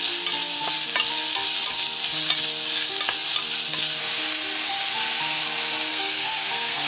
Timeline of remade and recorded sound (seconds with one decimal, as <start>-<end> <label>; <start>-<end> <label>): 0.0-5.9 recorded; 5.9-6.9 remade